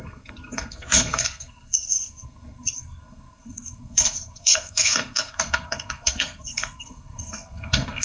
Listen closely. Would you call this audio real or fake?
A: fake